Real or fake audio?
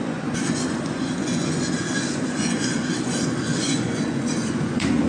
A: fake